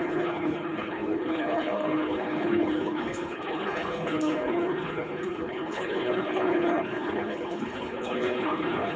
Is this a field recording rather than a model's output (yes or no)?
no